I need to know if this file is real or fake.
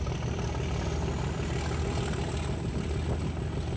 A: real